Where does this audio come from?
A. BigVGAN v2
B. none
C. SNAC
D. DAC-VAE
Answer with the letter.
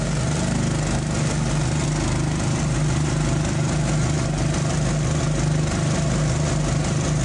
B